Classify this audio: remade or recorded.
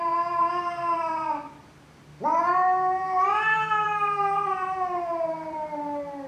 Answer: remade